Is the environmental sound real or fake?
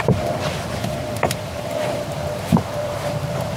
fake